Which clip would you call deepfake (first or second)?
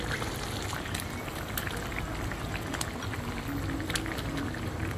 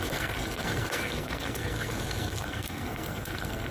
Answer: second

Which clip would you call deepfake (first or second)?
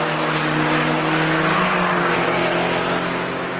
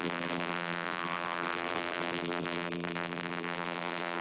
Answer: second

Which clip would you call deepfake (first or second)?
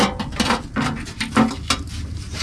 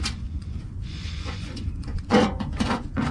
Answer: second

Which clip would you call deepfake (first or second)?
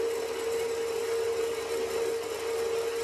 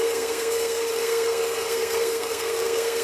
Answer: second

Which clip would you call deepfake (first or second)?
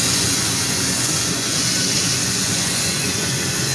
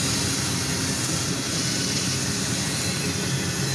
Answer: first